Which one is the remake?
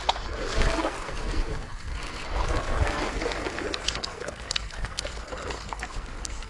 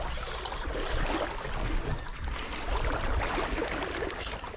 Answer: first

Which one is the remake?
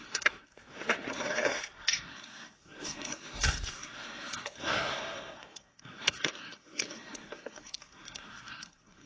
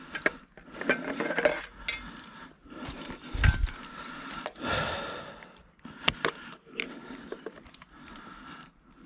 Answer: first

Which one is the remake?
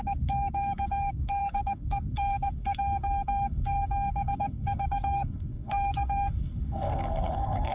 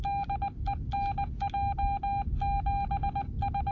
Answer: first